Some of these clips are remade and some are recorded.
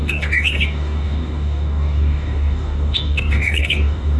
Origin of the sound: remade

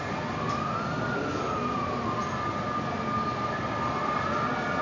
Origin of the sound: recorded